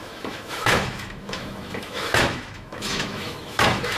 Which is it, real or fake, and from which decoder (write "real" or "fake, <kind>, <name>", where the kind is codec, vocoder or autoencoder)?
fake, autoencoder, DAC-VAE